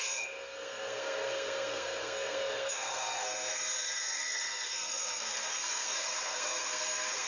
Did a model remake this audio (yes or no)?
yes